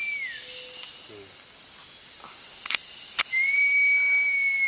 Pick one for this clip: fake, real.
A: real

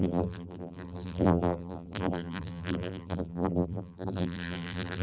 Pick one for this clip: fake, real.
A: fake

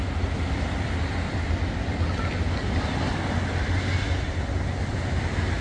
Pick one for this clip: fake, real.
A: real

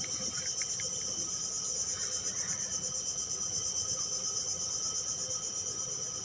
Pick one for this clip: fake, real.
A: real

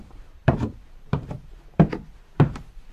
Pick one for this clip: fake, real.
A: fake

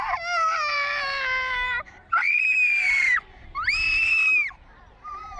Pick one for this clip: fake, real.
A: fake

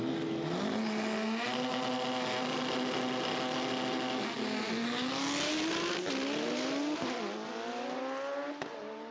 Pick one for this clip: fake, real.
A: real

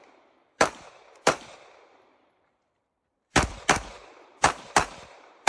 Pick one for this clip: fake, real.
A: fake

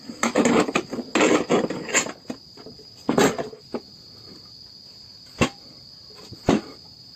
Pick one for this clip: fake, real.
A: real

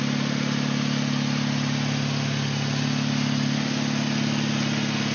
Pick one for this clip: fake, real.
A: real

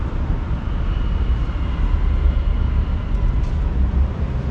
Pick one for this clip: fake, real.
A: fake